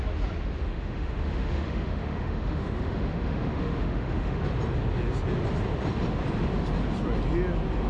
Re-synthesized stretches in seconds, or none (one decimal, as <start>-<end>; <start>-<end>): 0.6-4.4